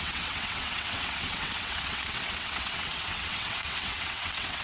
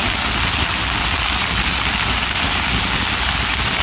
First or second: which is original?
second